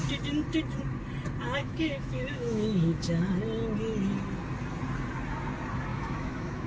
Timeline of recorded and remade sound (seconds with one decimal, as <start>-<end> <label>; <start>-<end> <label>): 0.0-1.6 recorded; 1.6-3.3 remade; 3.3-5.9 recorded; 5.9-6.7 remade